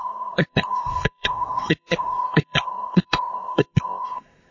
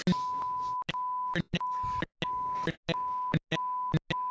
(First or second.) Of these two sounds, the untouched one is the second